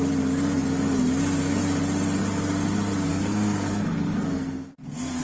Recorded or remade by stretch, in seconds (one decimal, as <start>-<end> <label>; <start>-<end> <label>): 0.0-3.1 recorded; 3.1-5.2 remade